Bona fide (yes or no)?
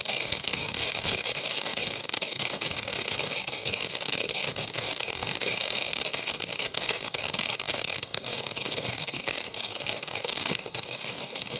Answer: no